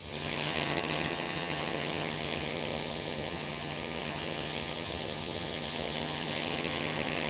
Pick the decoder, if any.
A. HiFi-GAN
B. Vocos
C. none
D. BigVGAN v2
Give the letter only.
A